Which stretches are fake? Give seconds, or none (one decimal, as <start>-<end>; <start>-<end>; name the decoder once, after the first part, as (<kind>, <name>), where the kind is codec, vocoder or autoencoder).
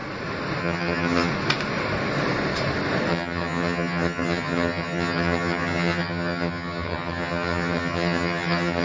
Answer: 0.6-1.3 (vocoder, HiFi-GAN); 3.1-8.8